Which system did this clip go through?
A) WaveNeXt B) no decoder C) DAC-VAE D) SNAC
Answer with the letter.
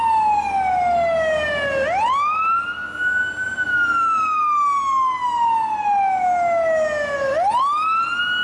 B